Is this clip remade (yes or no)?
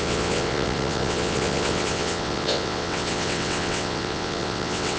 yes